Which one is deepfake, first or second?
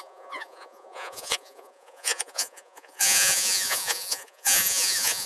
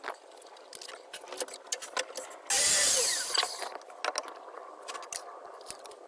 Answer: first